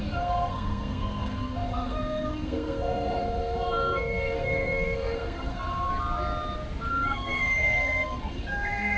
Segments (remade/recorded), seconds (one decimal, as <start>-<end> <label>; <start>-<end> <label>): 0.0-5.9 remade; 5.9-6.9 recorded; 6.9-9.0 remade